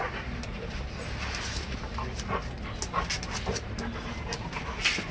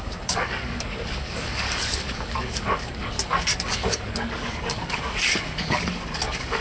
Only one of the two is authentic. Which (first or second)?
first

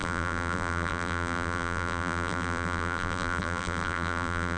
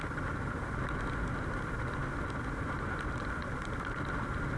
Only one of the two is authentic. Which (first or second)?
second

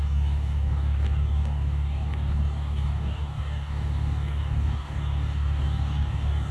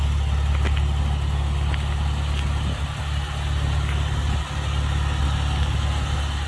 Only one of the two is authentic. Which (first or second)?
second